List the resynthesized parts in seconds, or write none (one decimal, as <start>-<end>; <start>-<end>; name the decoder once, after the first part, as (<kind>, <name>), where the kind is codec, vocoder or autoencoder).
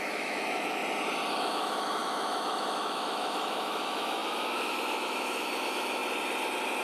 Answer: 0.0-0.8 (autoencoder, DAC-VAE); 1.3-6.0